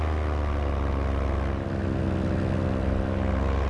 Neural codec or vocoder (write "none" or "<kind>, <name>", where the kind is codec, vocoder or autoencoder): none